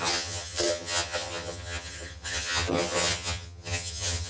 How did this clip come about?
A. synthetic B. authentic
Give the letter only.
A